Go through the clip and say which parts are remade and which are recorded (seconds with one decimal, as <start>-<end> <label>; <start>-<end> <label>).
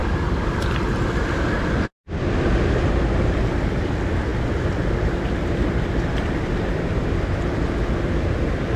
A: 0.0-0.6 remade; 0.6-8.8 recorded